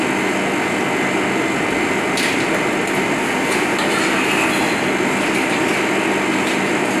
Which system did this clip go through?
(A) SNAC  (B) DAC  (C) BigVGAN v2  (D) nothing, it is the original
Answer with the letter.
D